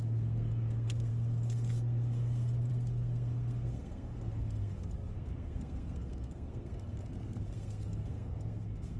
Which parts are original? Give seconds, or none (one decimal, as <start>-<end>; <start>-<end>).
none